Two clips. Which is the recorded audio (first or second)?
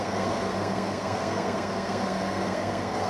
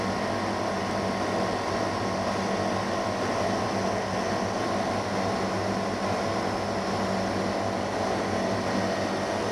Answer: second